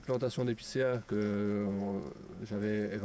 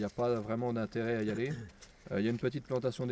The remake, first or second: first